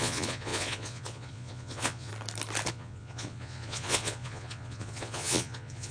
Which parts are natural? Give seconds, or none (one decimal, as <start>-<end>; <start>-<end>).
2.1-2.7